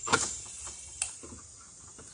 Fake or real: real